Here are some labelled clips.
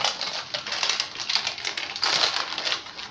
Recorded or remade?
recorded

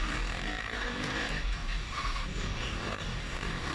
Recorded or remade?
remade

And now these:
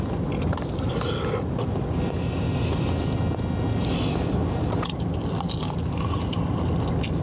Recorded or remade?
recorded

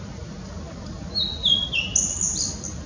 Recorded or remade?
recorded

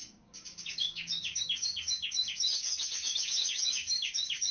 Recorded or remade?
remade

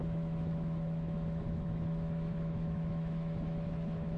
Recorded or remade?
remade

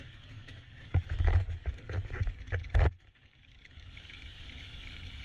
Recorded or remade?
remade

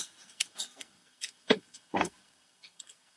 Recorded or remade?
remade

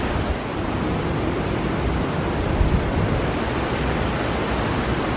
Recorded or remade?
recorded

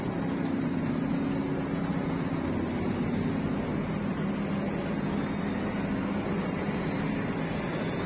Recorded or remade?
recorded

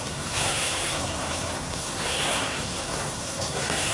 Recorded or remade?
remade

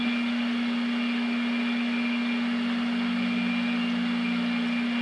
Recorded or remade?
recorded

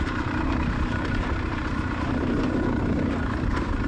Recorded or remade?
remade